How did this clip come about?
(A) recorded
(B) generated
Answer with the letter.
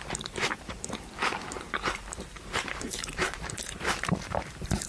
B